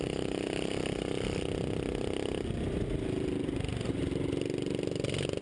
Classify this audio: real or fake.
real